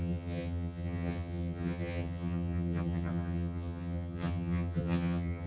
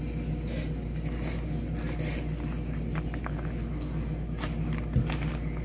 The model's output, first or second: first